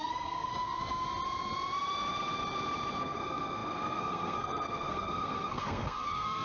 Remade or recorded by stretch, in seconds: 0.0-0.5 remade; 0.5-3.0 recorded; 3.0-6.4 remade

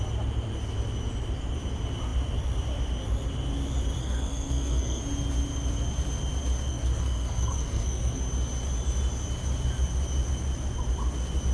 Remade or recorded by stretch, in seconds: 0.0-4.0 recorded; 4.0-5.0 remade; 5.0-6.7 recorded; 6.7-8.2 remade; 8.2-11.5 recorded

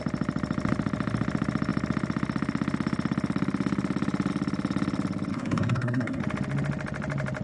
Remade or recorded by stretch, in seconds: 0.0-5.3 recorded; 5.3-6.2 remade; 6.2-7.4 recorded

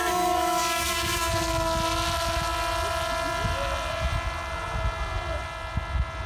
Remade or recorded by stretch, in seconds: 0.0-1.3 remade; 1.3-6.3 recorded